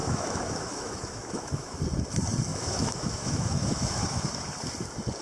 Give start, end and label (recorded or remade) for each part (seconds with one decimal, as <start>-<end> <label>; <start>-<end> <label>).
0.0-1.8 remade; 1.8-2.5 recorded; 2.5-4.3 remade; 4.3-5.2 recorded